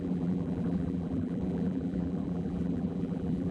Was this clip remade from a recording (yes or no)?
yes